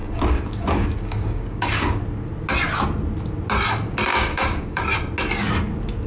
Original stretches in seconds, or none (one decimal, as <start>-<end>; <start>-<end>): 2.0-4.1; 4.8-6.1